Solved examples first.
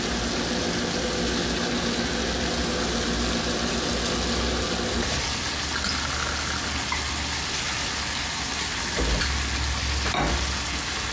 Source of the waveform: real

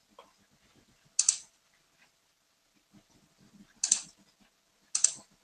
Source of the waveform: real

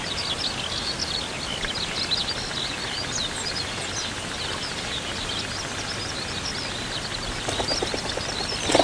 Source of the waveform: real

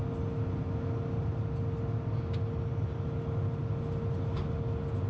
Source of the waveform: real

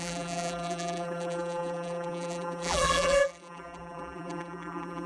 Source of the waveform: fake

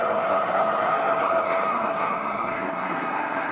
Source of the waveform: fake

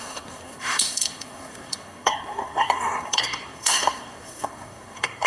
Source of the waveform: fake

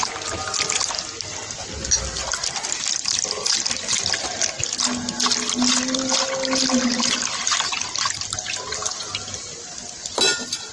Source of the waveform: real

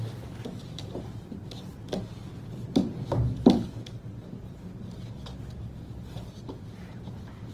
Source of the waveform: real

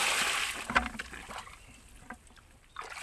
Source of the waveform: real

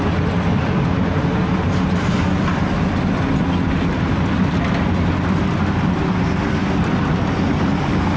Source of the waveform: real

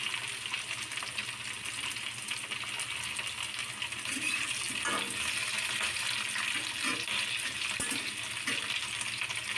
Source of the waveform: real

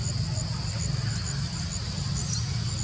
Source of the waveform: real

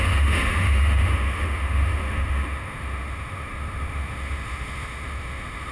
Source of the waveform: fake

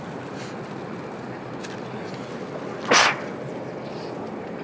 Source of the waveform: real